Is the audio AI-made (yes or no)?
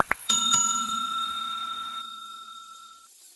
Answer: yes